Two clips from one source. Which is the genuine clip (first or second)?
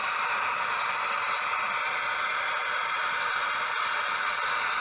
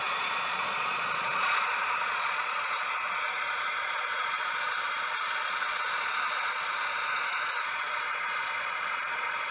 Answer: first